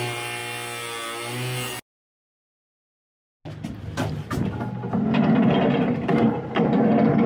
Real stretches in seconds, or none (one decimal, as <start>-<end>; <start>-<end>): 0.0-7.3